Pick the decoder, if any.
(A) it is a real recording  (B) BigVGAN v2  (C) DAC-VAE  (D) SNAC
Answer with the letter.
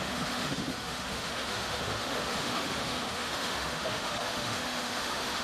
C